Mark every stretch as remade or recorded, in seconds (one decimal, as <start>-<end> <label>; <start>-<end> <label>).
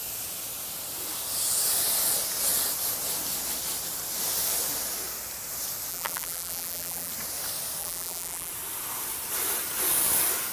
0.0-5.9 recorded; 5.9-7.1 remade; 7.1-7.8 recorded; 7.8-8.5 remade; 8.5-10.5 recorded